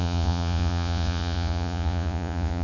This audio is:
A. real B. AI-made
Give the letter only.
B